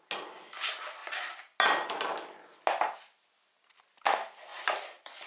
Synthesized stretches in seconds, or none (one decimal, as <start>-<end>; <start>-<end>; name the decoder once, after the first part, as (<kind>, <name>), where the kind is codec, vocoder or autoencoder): 4.5-5.3 (vocoder, BigVGAN v2)

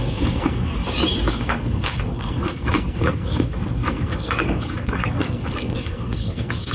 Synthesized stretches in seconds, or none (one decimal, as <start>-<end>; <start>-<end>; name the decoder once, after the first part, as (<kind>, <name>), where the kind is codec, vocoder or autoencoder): 0.0-0.7 (codec, SNAC); 1.3-6.7